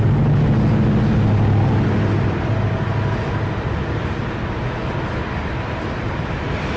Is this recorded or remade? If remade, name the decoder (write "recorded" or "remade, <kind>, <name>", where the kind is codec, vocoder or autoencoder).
recorded